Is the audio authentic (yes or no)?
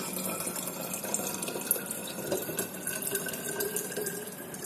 yes